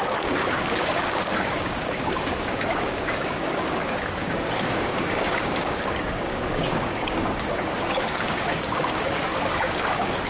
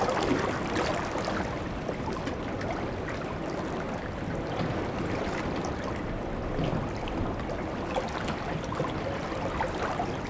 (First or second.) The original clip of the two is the second